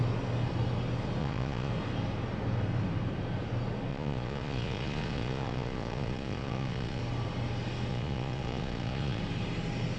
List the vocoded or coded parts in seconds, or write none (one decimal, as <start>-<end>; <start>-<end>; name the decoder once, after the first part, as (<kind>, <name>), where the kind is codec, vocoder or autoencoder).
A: 1.2-1.7 (vocoder, Vocos); 3.9-7.0; 7.9-9.2